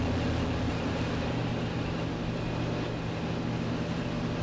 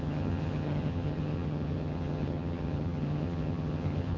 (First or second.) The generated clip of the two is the second